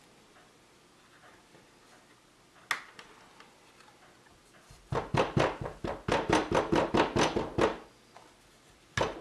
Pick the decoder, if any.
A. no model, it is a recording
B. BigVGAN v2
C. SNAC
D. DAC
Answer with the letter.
A